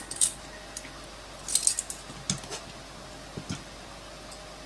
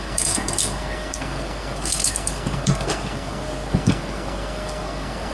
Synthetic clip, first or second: second